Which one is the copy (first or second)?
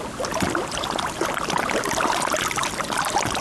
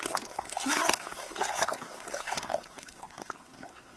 second